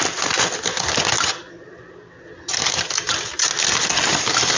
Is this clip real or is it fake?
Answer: real